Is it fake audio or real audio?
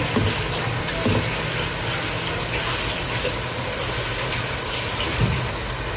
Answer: real